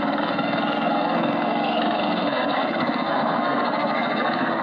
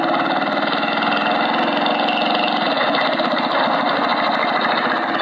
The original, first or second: second